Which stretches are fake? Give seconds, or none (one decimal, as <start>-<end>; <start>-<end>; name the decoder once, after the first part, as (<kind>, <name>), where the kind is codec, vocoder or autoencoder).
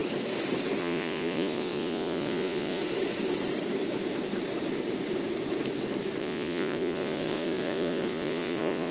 0.8-2.8 (vocoder, Vocos); 6.2-8.9